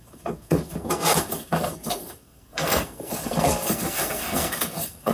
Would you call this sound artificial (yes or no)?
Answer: yes